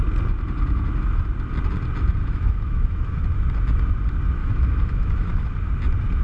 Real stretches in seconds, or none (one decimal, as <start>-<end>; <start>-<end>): 0.0-2.2; 3.2-4.4; 5.5-6.2